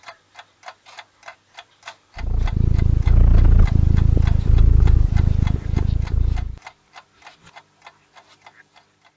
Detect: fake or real real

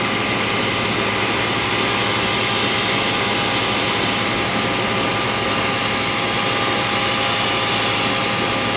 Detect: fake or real real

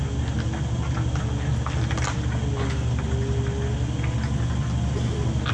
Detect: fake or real real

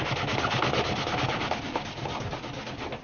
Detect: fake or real real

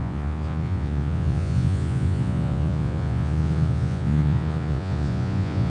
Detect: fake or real fake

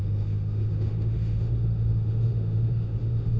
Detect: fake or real fake